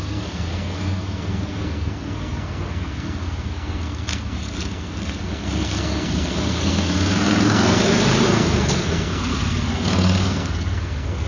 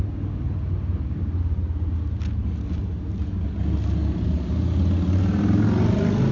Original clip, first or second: second